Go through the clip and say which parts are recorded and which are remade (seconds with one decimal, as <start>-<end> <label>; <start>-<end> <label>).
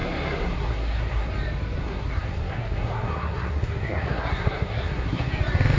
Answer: 0.0-1.3 remade; 1.3-1.8 recorded; 1.8-5.3 remade; 5.3-5.8 recorded